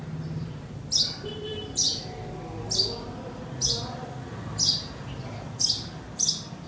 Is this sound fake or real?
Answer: real